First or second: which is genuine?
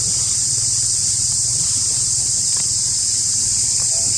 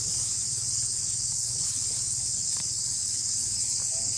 first